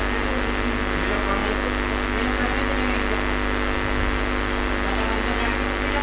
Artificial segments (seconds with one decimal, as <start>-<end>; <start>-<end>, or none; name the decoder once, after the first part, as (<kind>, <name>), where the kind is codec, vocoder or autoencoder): none